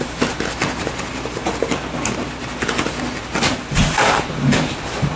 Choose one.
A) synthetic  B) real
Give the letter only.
B